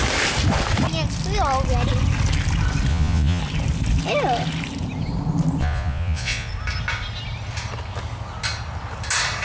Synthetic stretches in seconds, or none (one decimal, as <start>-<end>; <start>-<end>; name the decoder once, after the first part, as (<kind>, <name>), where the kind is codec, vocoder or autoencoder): 2.9-3.4 (vocoder, Vocos); 5.6-6.5